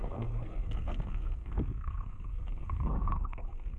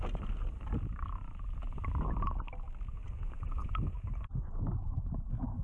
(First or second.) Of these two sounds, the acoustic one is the second